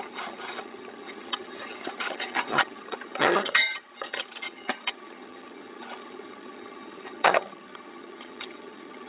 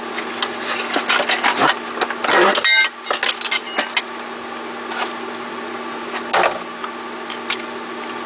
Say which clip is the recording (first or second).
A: second